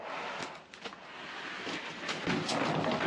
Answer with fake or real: real